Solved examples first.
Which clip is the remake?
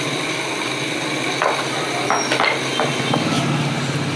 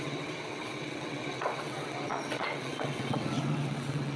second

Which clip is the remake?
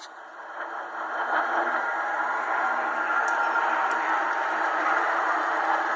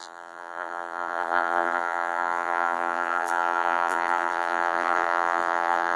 second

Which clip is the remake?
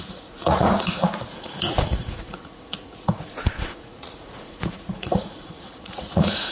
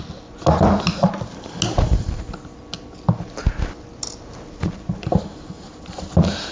first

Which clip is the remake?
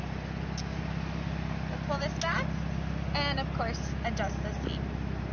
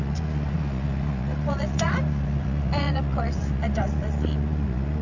second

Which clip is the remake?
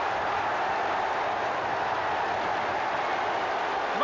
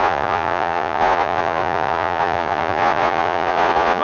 second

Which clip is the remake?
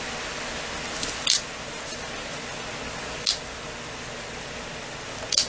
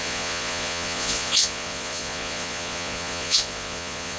second